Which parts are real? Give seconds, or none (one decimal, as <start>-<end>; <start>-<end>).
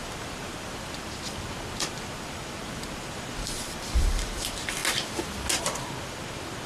4.8-5.6